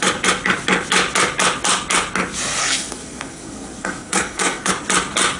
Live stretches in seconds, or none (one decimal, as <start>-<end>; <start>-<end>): 0.0-2.6; 4.7-5.4